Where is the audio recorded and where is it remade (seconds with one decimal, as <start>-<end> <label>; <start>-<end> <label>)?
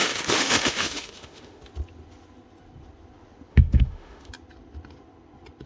0.0-1.6 remade; 1.6-3.5 recorded; 3.5-4.3 remade; 4.3-5.7 recorded